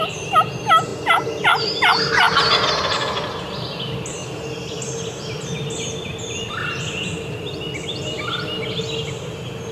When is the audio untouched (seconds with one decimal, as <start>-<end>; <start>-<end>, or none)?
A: 0.0-9.7